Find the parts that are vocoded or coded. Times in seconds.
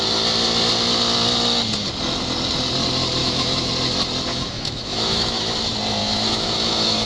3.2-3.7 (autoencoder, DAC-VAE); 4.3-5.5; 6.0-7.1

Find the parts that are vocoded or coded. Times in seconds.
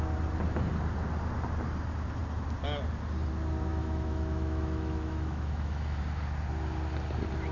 3.7-6.0 (autoencoder, DAC-VAE)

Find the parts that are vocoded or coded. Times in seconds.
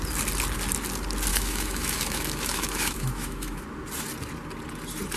1.3-3.6 (autoencoder, DAC-VAE)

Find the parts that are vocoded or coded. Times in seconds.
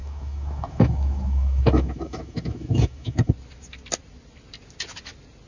0.0-3.3 (autoencoder, DAC-VAE)